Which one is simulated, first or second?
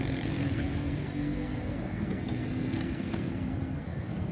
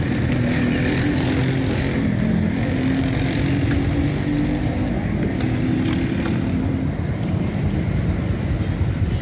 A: first